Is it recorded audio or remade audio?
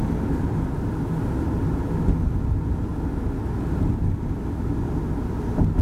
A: recorded